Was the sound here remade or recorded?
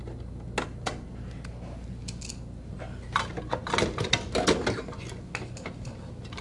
recorded